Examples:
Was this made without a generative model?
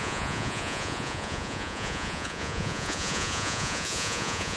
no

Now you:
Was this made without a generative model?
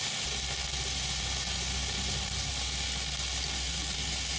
yes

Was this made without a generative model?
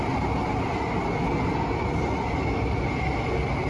yes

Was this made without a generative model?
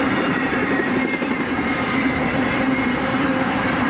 no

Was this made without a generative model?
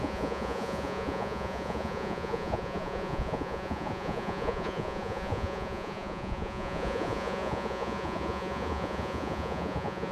no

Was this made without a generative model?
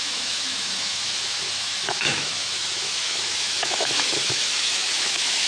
no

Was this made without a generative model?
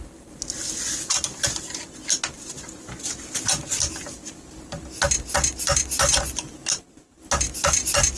yes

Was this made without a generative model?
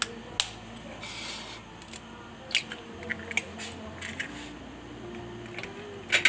yes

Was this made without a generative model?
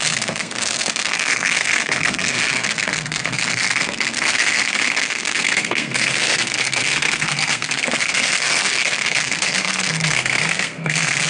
no